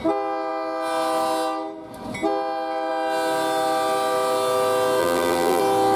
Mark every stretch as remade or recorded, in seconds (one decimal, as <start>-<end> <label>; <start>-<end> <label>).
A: 0.0-5.0 recorded; 5.0-5.6 remade; 5.6-6.0 recorded